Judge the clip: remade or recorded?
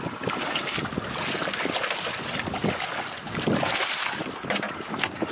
recorded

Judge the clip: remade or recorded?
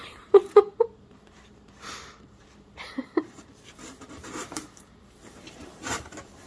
remade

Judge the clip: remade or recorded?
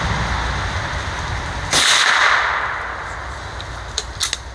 recorded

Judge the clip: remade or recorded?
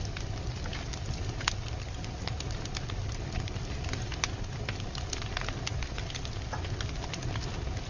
recorded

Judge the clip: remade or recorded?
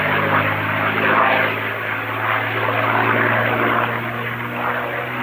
recorded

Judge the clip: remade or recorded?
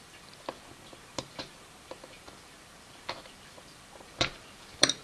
remade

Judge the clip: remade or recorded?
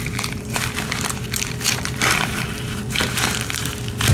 remade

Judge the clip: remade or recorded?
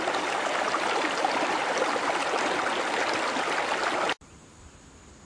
recorded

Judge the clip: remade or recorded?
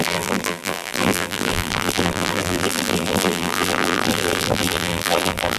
remade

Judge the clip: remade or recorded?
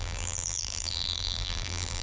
remade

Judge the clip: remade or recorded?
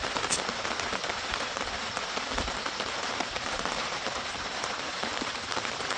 remade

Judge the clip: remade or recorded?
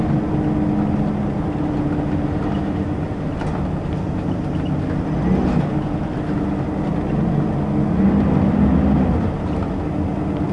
recorded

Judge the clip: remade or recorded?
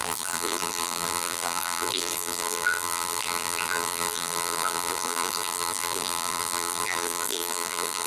remade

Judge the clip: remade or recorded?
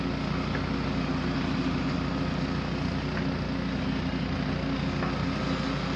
recorded